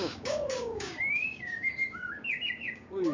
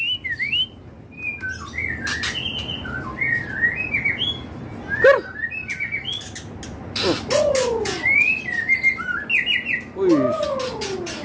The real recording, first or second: second